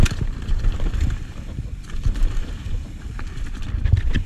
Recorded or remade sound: recorded